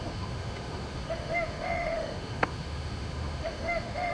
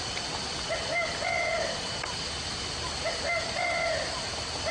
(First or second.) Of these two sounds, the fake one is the first